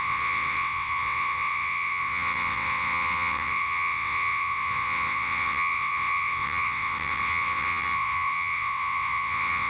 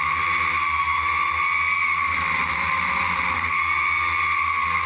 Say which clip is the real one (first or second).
second